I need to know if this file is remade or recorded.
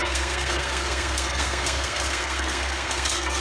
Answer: remade